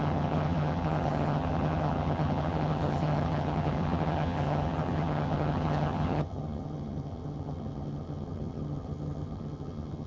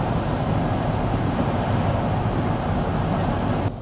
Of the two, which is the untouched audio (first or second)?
second